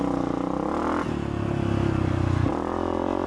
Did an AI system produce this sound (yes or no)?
no